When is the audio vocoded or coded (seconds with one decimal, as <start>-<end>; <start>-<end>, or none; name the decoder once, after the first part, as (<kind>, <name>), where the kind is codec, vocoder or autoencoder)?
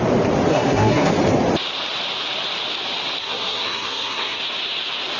0.5-1.1 (codec, SNAC); 3.2-4.4